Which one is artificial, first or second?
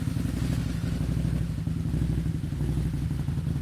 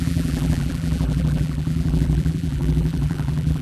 second